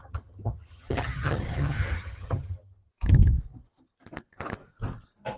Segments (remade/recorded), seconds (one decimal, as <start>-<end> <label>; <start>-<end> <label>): 0.0-2.9 remade; 2.9-5.4 recorded